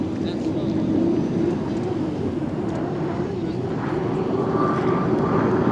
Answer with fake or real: real